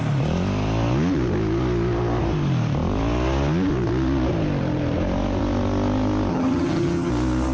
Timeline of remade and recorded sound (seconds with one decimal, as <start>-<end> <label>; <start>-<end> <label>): 0.0-6.3 recorded; 6.3-7.1 remade; 7.1-7.5 recorded